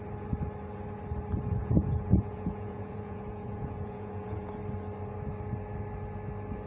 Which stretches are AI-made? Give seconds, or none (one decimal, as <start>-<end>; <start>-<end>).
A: 1.6-4.5